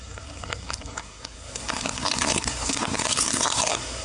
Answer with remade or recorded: remade